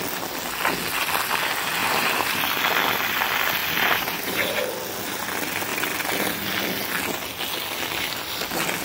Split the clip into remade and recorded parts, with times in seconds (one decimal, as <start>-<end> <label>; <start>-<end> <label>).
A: 0.0-1.8 recorded; 1.8-2.4 remade; 2.4-3.6 recorded; 3.6-4.6 remade; 4.6-8.8 recorded